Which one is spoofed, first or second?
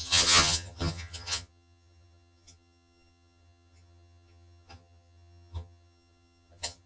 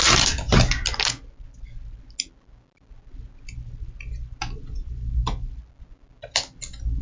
first